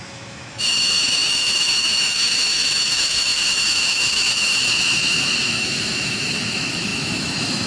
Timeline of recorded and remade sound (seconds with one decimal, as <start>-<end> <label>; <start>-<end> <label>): 0.0-7.7 remade